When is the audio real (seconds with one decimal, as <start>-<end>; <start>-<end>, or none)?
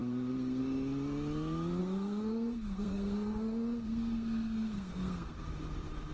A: 0.6-1.8; 5.5-6.1